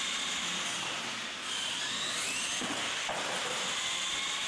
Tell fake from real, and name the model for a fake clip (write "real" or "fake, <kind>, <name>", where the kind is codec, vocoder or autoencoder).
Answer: real